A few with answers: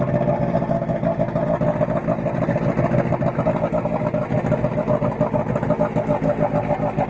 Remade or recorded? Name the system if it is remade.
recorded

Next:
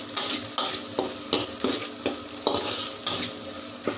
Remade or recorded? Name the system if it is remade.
recorded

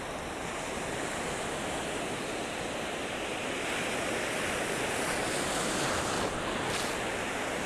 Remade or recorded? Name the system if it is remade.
recorded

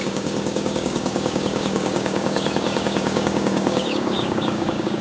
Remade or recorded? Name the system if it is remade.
remade, codec, DAC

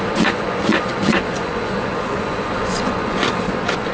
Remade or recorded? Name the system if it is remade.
remade, vocoder, Vocos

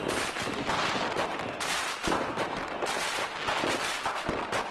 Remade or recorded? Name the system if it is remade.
recorded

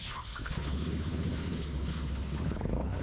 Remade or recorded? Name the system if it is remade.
remade, codec, HILCodec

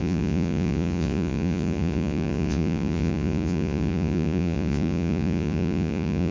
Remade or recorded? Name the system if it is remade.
remade, vocoder, Vocos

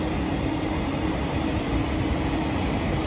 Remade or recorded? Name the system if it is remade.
recorded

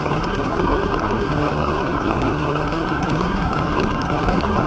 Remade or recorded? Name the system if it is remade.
remade, codec, SNAC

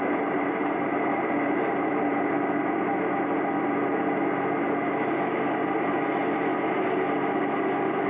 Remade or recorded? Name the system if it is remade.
recorded